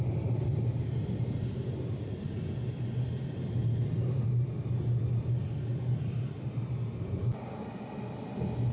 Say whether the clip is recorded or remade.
recorded